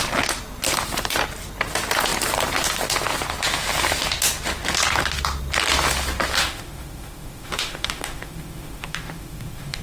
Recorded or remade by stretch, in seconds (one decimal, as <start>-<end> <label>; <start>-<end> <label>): 0.0-6.4 recorded; 6.4-9.8 remade